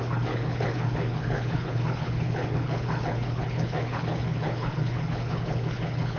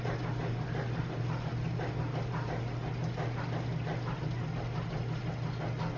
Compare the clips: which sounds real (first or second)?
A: second